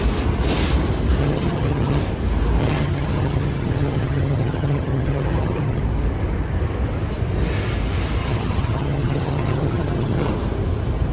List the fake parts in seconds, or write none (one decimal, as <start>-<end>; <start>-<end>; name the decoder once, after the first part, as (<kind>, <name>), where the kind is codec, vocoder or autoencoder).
1.2-2.0 (vocoder, HiFi-GAN); 2.6-5.8; 8.2-10.3

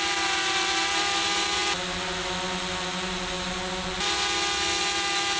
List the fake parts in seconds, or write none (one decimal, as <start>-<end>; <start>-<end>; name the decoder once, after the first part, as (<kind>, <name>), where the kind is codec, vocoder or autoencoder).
none